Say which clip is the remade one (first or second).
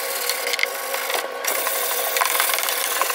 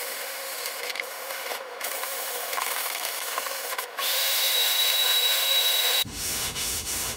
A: second